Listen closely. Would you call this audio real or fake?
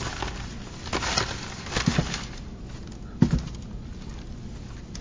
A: real